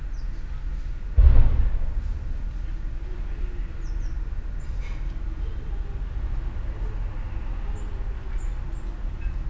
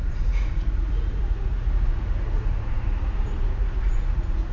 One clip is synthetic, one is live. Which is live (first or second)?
first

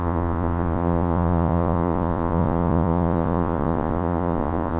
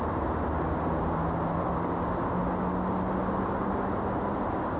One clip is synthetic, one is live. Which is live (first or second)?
second